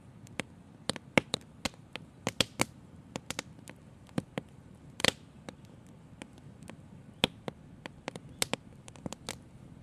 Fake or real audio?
real